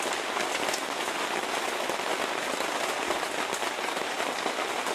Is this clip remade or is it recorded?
recorded